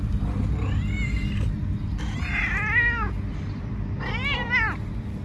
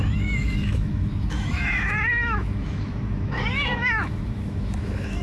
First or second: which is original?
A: first